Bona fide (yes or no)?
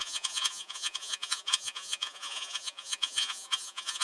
no